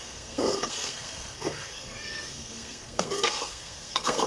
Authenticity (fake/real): fake